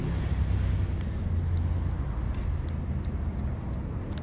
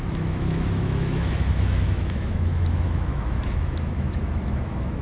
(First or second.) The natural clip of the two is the first